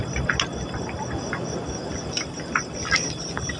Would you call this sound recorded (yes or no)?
yes